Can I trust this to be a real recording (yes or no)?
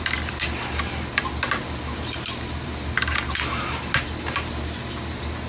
yes